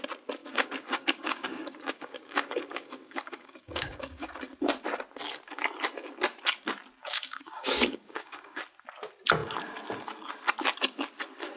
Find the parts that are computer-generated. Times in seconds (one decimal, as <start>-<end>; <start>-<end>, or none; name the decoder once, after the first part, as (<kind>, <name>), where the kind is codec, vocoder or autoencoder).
0.4-4.3 (codec, DAC); 7.0-8.6